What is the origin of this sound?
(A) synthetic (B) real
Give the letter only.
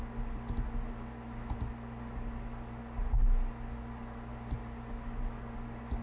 B